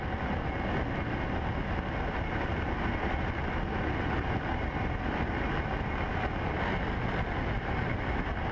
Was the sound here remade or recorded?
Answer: recorded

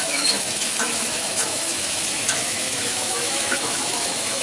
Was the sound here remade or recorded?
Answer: remade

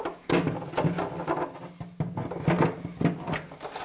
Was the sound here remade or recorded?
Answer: recorded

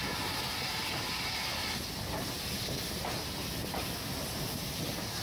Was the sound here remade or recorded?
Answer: recorded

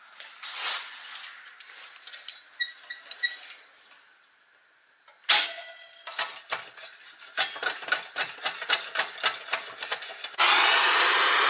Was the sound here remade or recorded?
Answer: recorded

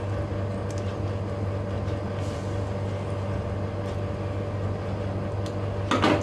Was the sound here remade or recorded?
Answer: recorded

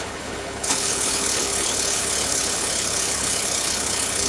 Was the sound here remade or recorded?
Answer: remade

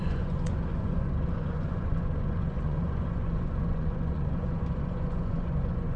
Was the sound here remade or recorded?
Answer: remade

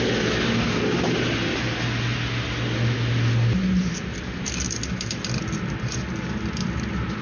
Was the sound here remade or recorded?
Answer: recorded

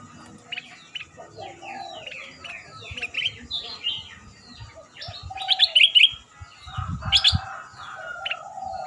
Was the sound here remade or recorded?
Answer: recorded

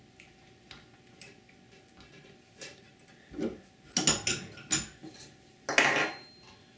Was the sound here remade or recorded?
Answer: recorded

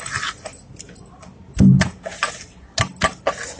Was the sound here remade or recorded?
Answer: recorded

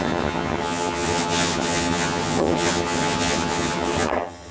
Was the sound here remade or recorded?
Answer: remade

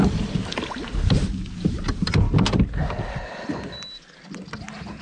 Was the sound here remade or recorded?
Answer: recorded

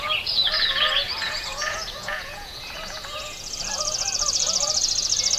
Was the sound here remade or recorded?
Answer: remade